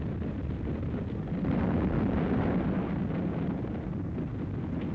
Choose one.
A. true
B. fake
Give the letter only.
A